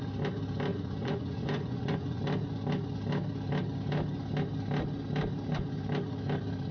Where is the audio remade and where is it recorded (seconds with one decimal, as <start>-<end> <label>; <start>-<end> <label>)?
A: 0.0-0.7 recorded; 0.7-2.2 remade; 2.2-6.7 recorded